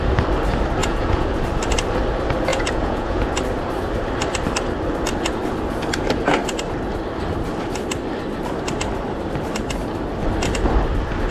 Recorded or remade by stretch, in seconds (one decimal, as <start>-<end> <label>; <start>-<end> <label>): 0.0-0.8 recorded; 0.8-1.4 remade; 1.4-2.5 recorded; 2.5-3.3 remade; 3.3-11.3 recorded